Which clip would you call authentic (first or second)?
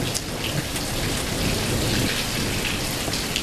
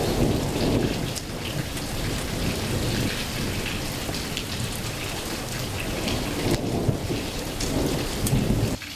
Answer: first